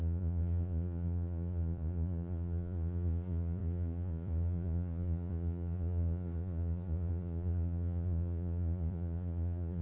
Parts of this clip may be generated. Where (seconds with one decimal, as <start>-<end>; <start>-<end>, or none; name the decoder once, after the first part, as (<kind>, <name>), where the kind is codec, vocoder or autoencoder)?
0.0-9.8 (vocoder, Vocos)